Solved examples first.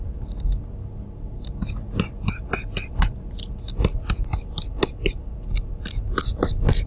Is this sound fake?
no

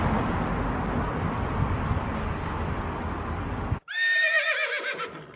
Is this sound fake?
no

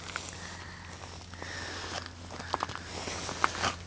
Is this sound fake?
no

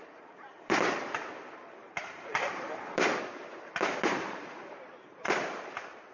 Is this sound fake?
yes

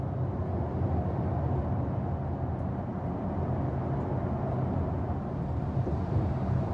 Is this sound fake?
no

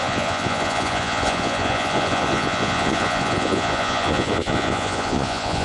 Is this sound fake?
yes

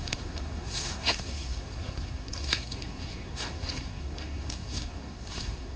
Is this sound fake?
yes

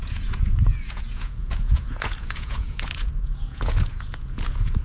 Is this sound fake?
yes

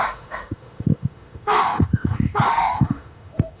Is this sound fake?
yes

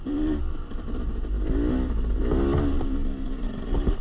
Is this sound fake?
no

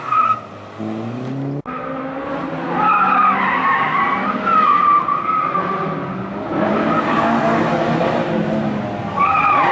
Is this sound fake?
no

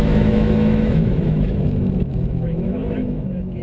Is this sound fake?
yes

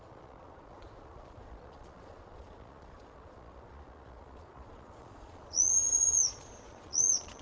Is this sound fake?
yes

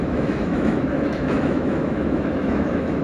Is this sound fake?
yes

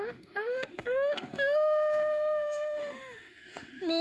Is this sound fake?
yes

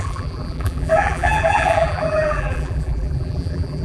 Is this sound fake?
yes